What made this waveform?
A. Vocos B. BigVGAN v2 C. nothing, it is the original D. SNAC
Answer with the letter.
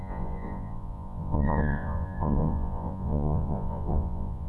A